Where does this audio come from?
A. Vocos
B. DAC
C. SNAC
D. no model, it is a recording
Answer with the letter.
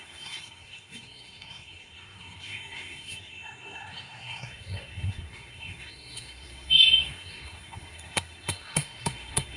C